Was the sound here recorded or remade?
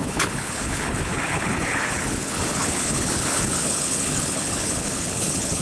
remade